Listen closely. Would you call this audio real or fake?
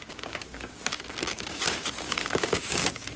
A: fake